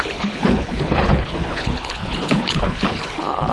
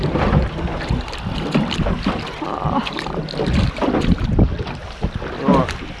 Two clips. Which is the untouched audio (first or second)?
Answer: second